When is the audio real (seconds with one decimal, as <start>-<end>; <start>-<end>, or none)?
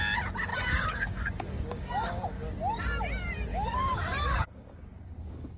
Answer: 0.0-0.5; 2.5-3.5